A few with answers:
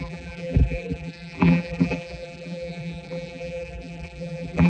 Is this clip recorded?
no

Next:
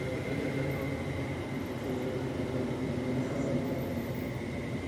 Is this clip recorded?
yes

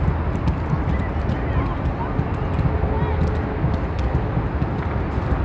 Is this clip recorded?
yes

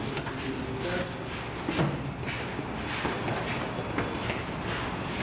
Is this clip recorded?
yes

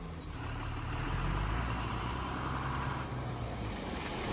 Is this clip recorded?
no